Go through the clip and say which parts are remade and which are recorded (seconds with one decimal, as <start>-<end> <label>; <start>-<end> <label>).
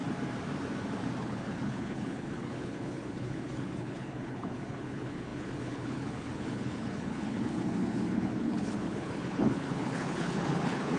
0.0-1.2 recorded; 1.2-11.0 remade